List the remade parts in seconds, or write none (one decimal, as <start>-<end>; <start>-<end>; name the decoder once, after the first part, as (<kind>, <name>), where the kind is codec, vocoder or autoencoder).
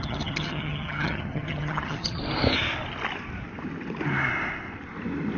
0.0-2.2 (vocoder, HiFi-GAN)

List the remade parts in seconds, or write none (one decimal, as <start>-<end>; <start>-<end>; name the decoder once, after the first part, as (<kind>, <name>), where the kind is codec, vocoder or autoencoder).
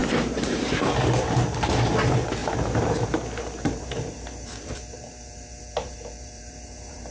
0.0-7.1 (vocoder, BigVGAN v2)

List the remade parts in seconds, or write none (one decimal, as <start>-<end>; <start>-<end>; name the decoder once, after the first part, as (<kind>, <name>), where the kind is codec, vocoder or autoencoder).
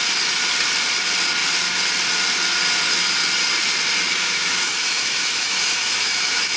4.1-6.6 (autoencoder, DAC-VAE)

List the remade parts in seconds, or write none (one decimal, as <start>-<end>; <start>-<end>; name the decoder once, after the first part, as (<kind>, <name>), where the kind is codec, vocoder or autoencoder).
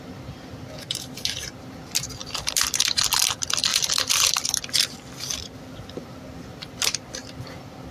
2.2-2.9 (vocoder, BigVGAN v2); 3.7-4.6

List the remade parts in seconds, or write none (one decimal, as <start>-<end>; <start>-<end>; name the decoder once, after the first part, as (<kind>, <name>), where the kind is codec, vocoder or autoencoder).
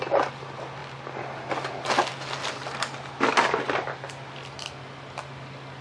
none